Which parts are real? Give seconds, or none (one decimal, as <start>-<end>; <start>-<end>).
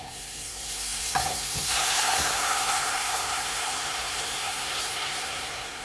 none